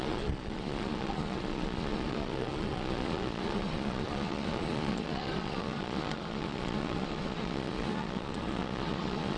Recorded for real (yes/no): no